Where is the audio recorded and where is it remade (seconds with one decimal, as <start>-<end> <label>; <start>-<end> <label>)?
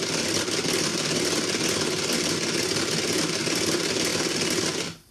0.0-4.1 recorded; 4.1-5.1 remade